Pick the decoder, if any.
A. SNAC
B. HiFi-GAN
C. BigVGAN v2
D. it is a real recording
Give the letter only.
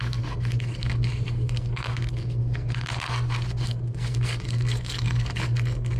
A